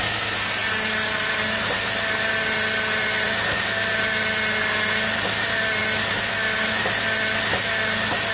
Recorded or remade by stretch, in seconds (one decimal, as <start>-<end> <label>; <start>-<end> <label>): 0.0-8.3 recorded